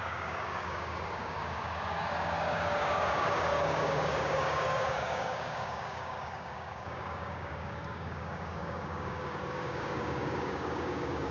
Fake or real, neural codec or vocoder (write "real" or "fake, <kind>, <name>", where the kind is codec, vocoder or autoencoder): fake, codec, DAC